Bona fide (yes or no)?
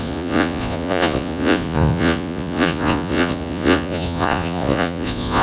no